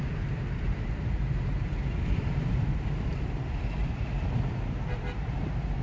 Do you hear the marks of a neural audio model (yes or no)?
yes